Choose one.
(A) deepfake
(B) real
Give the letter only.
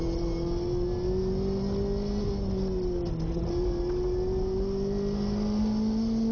B